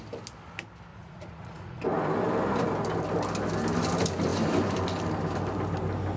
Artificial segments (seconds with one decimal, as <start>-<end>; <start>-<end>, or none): 0.9-1.8